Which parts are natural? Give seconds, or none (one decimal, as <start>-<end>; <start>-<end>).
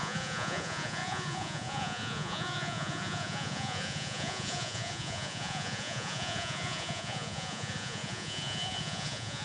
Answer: none